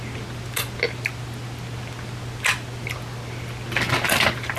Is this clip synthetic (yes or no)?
no